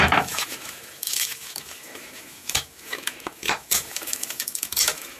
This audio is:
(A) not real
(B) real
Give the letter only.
A